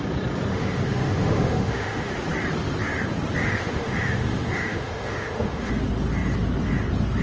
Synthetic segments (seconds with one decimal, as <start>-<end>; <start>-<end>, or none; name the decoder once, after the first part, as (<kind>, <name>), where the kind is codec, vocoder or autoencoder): 0.5-2.1 (autoencoder, DAC-VAE); 3.4-5.7